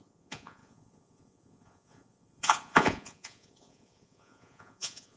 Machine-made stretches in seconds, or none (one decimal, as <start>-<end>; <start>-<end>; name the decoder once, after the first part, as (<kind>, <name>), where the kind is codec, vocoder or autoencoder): 0.0-5.2 (vocoder, Vocos)